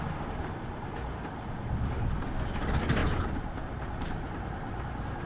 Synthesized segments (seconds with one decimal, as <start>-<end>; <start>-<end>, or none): none